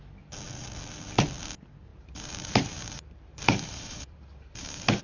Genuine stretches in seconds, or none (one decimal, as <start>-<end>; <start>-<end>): 0.0-1.9